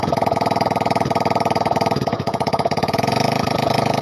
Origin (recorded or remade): remade